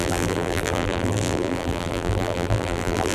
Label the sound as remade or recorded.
remade